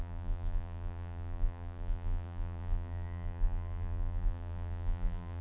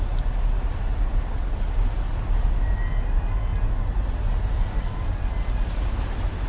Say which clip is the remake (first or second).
first